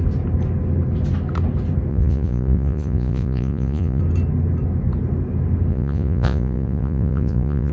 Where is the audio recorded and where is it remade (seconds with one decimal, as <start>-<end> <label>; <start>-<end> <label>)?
0.0-1.9 recorded; 1.9-4.0 remade; 4.0-5.7 recorded; 5.7-7.7 remade